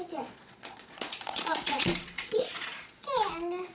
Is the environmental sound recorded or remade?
remade